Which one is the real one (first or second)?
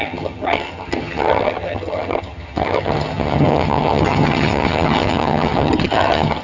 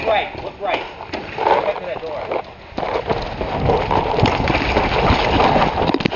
second